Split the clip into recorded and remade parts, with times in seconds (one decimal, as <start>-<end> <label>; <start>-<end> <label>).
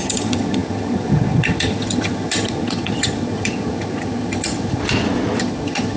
0.0-4.8 remade; 4.8-5.4 recorded; 5.4-6.0 remade